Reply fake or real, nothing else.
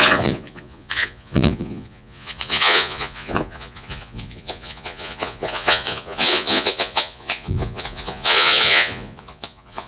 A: fake